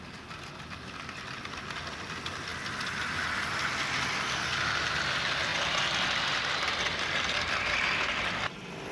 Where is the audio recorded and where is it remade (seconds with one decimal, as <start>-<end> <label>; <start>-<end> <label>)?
0.0-8.9 recorded